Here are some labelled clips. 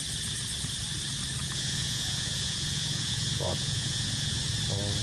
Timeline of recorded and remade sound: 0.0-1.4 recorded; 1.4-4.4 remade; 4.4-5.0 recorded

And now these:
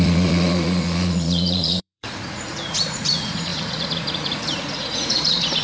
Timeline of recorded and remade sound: 0.0-5.6 remade

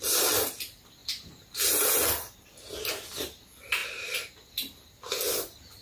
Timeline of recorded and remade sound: 0.0-5.8 recorded

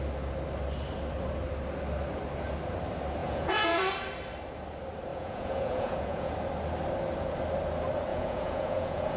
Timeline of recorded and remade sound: 0.0-3.2 recorded; 3.2-3.8 remade; 3.8-5.1 recorded; 5.1-6.3 remade; 6.3-8.1 recorded; 8.1-9.2 remade

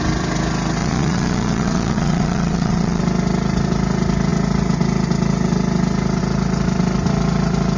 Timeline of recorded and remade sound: 0.0-0.8 recorded; 0.8-3.0 remade; 3.0-7.8 recorded